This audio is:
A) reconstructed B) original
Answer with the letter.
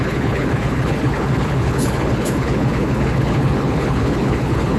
A